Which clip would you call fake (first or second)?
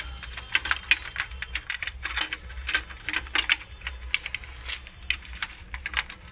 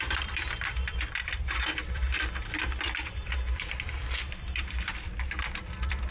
second